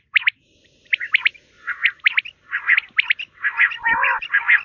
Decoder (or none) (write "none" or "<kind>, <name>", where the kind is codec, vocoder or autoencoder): none